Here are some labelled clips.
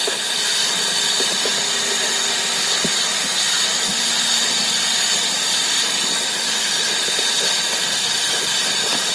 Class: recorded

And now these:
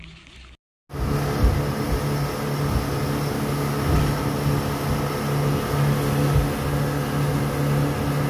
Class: recorded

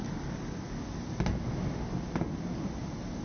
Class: recorded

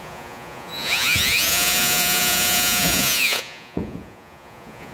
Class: remade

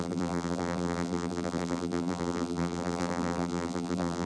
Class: remade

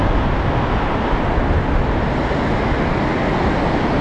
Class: recorded